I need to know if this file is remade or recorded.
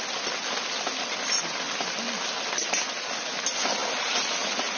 recorded